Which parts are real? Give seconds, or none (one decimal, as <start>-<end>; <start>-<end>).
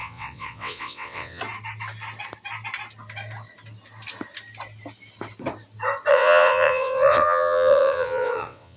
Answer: 1.4-6.1